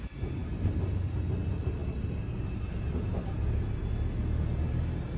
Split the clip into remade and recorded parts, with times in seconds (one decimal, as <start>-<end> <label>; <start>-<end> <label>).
0.0-5.2 recorded